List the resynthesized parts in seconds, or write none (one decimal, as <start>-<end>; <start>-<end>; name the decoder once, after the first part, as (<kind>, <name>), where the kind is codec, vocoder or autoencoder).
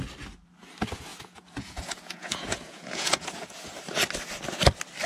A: 1.1-3.8 (vocoder, Vocos)